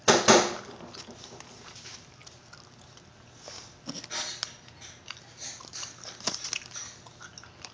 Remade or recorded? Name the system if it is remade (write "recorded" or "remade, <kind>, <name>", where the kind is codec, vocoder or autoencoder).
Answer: recorded